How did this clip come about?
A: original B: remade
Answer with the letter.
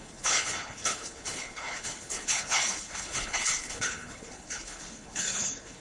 B